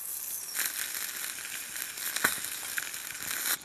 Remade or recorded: recorded